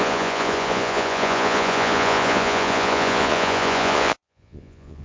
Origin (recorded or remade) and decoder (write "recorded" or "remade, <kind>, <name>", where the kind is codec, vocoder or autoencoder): remade, vocoder, Vocos